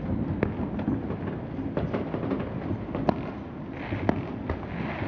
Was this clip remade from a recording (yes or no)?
no